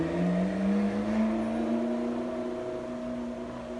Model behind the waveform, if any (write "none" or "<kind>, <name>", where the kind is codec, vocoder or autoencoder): none